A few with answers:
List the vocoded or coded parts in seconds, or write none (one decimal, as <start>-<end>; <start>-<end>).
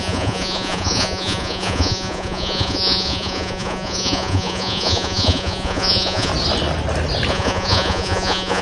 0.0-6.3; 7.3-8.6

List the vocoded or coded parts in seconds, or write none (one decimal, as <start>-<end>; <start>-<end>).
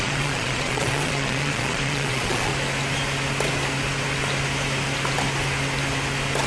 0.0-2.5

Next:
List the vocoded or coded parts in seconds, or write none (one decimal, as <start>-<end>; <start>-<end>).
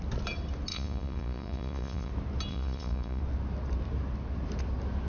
0.7-2.1; 2.5-3.2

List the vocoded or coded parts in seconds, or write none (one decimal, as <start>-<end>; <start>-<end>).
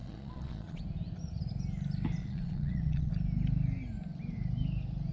0.0-0.8; 2.2-3.1